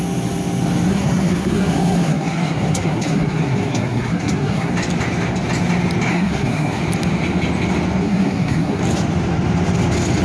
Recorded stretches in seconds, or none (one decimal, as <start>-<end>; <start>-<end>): 0.0-0.9; 4.7-6.1; 6.8-8.0; 8.8-10.2